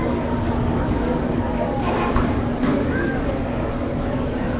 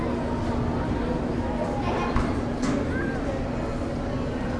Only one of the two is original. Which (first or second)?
second